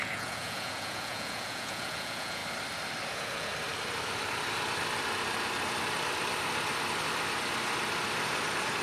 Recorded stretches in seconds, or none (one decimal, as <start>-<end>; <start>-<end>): 2.4-3.1; 3.5-8.8